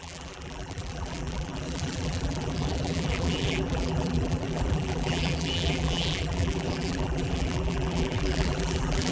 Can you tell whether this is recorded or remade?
remade